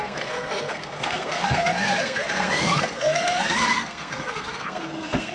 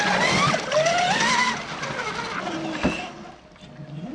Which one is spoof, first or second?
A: first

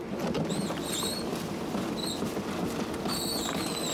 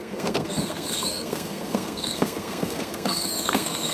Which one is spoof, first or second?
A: second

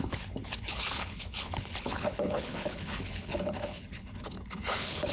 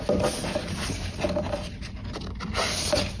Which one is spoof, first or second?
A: first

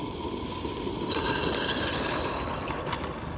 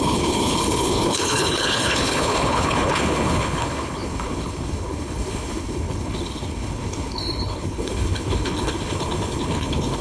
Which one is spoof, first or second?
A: second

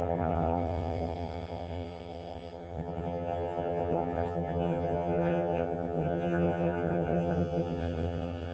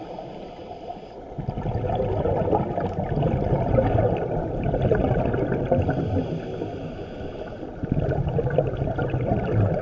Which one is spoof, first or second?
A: first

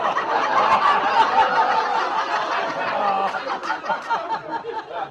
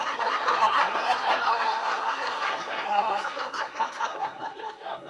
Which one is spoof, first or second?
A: second